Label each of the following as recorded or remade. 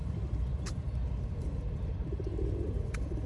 remade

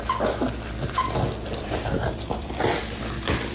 remade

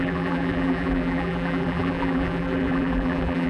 remade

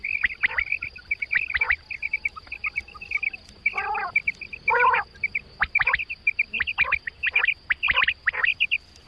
recorded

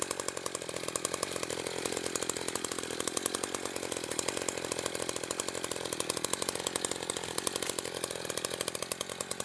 recorded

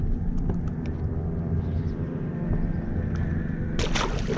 recorded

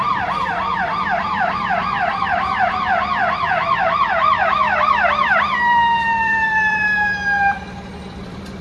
remade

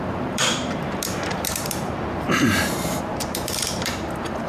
remade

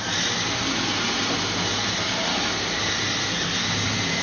recorded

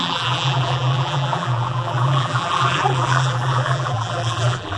remade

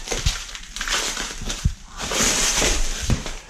remade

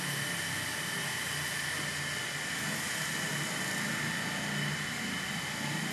recorded